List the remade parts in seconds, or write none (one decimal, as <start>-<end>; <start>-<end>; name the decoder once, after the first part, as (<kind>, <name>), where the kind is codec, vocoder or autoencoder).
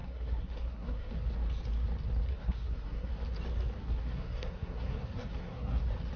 0.0-1.1 (codec, SNAC); 2.3-3.1; 3.8-5.8